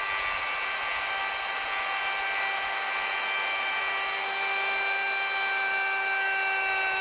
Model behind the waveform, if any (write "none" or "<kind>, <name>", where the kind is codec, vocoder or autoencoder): none